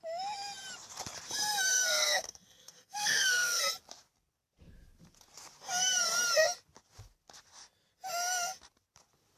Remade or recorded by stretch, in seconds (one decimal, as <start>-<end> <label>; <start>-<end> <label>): 0.0-1.7 recorded; 1.7-3.6 remade; 3.6-9.4 recorded